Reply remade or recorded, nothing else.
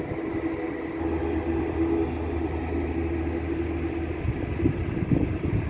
recorded